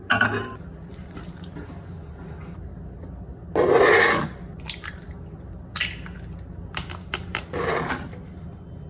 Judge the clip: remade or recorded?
recorded